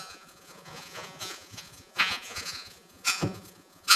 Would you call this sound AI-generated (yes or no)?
yes